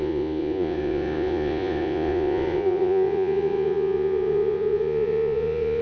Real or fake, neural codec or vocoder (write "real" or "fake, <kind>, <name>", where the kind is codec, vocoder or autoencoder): fake, vocoder, Vocos